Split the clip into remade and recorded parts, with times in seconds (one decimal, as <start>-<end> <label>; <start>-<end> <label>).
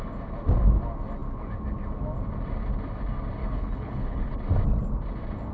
0.0-3.4 recorded; 3.4-4.3 remade; 4.3-5.5 recorded